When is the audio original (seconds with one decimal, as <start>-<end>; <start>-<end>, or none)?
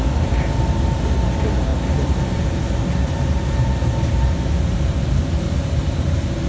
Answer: 0.0-6.5